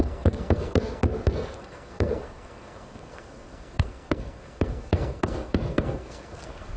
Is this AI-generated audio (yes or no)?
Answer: yes